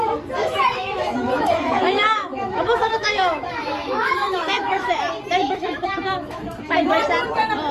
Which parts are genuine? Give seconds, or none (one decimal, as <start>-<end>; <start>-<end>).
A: 0.0-0.4; 5.0-5.4; 6.4-7.7